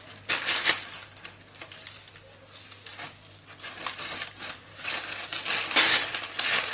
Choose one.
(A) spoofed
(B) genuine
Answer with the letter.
B